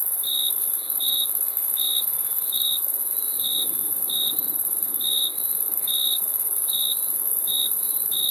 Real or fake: fake